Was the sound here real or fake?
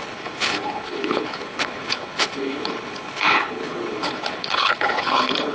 fake